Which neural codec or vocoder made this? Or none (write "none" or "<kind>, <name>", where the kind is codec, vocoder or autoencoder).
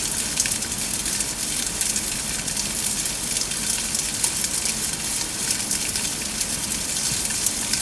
none